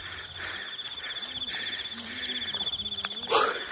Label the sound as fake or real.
real